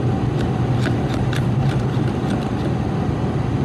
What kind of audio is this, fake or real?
real